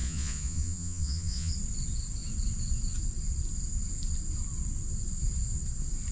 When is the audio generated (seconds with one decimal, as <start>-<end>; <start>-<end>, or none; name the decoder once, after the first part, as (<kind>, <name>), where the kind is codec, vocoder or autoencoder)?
0.0-1.5 (vocoder, Vocos)